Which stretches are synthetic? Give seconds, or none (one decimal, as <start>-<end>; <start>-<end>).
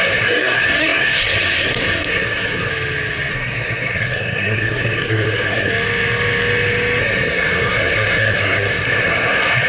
0.0-2.7; 3.3-5.7; 7.0-9.7